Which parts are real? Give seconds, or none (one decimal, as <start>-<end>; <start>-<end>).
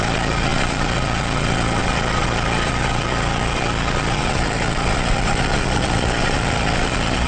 none